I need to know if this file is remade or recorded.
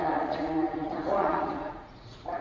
remade